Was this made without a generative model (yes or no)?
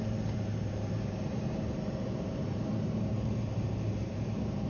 no